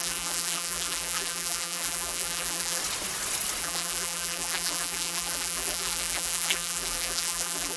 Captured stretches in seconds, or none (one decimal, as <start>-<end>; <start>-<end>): 2.8-3.6